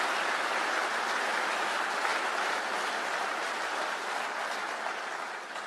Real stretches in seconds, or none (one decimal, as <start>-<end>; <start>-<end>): 0.0-5.7